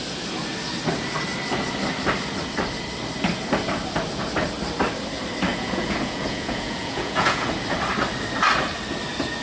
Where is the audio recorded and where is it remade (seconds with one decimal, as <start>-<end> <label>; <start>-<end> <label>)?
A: 0.0-5.5 recorded; 5.5-7.5 remade; 7.5-9.4 recorded